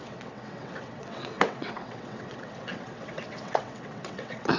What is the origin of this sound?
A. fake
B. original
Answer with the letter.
A